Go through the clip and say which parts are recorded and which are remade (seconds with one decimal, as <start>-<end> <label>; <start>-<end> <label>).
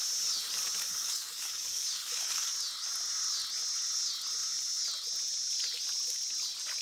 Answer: 0.0-0.9 recorded; 0.9-2.5 remade; 2.5-6.8 recorded